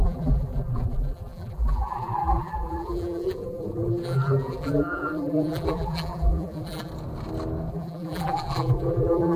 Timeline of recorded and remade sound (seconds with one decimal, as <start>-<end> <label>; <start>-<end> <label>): 0.0-6.9 remade; 6.9-7.7 recorded; 7.7-9.4 remade